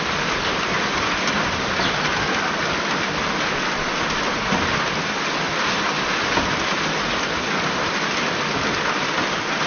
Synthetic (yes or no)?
no